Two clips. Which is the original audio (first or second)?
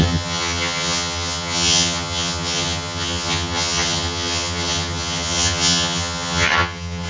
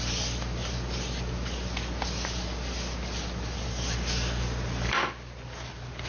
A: second